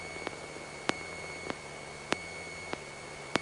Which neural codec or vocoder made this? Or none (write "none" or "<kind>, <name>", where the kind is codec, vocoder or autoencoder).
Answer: none